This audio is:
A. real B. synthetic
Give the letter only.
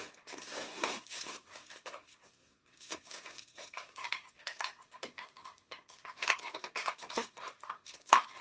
B